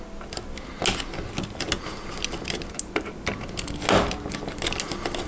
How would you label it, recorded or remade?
recorded